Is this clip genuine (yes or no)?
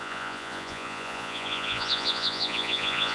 no